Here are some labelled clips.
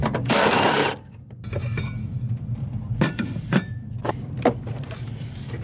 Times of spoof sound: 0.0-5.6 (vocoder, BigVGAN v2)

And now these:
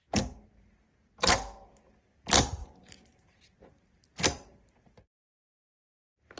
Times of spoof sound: 2.6-5.7 (vocoder, BigVGAN v2)

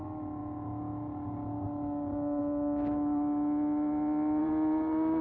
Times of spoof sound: 4.4-5.2 (vocoder, BigVGAN v2)

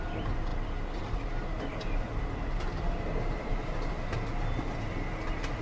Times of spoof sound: none

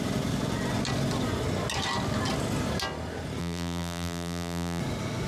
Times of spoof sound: 3.4-4.8 (vocoder, BigVGAN v2)

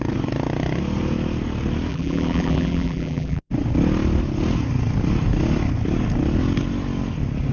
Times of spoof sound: 1.9-3.5 (vocoder, BigVGAN v2)

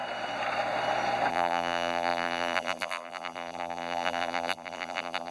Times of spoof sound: 1.3-5.3 (vocoder, BigVGAN v2)